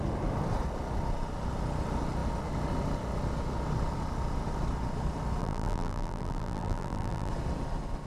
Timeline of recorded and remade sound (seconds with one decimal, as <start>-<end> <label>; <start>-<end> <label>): 0.0-5.4 recorded; 5.4-7.3 remade; 7.3-8.1 recorded